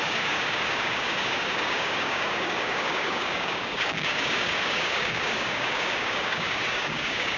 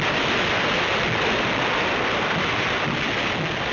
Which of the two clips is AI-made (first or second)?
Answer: first